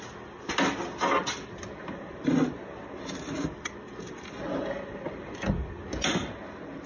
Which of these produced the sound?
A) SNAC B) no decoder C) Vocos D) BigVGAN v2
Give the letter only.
B